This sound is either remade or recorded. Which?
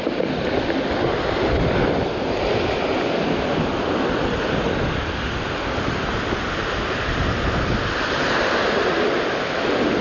recorded